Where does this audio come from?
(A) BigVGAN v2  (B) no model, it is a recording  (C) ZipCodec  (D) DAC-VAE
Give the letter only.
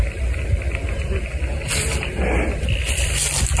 B